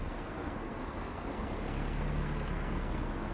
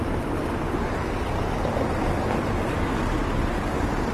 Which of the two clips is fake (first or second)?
first